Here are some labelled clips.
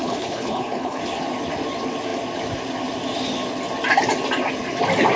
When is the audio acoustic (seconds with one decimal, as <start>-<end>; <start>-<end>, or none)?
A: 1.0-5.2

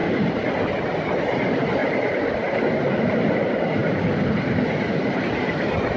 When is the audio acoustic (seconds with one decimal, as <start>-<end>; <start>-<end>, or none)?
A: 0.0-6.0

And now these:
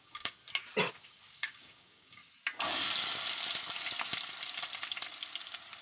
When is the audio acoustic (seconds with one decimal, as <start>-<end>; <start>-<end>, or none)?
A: 0.4-0.9; 2.2-5.8

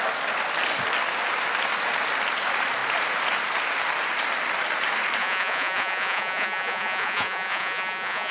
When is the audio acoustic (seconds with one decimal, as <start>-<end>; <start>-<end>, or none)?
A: 0.0-5.2

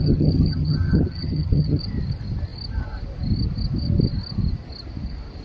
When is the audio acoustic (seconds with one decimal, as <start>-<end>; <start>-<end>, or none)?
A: 1.8-5.4

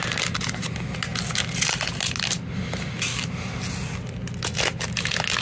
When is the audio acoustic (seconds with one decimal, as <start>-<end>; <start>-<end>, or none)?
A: 0.0-5.4

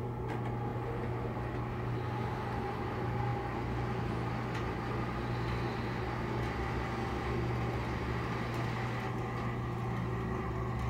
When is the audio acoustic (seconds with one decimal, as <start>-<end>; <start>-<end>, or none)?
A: 0.0-10.9

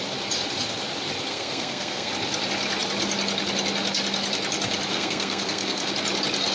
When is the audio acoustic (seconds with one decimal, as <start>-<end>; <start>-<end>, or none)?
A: 0.0-1.3; 2.1-4.9; 5.9-6.5